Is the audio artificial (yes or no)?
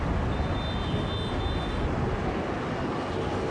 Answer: no